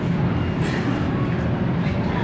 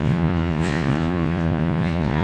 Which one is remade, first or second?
second